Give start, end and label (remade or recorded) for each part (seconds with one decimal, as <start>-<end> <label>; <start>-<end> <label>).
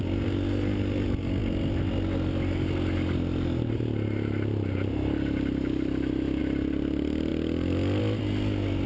0.0-8.9 recorded